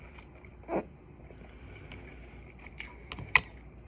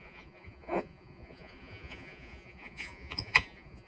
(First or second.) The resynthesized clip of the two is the second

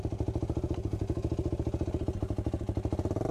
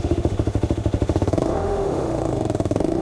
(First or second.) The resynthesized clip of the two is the second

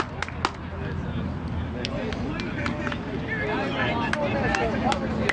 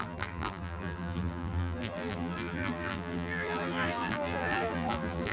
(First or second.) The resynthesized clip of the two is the second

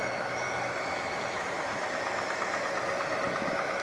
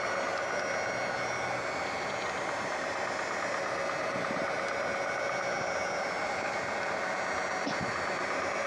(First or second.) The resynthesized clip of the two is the first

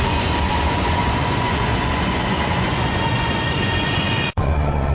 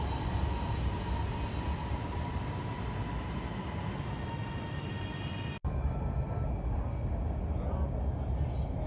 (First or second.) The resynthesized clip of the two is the first